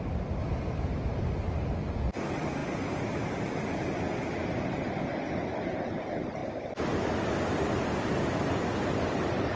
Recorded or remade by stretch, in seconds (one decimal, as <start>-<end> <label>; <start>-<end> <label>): 0.0-9.6 recorded